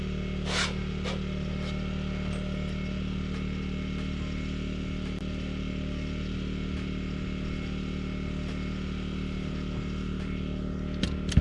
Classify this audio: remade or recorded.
recorded